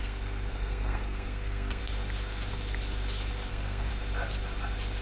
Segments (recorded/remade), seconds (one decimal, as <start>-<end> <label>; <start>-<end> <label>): 0.0-1.8 remade; 1.8-3.5 recorded; 3.5-3.9 remade; 3.9-5.0 recorded

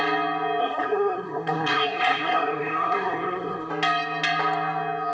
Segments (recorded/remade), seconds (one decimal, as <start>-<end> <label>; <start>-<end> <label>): 0.0-0.6 recorded; 0.6-3.7 remade; 3.7-5.1 recorded

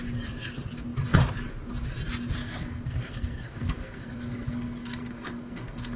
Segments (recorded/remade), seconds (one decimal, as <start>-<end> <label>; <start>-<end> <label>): 0.0-2.4 recorded; 2.4-6.0 remade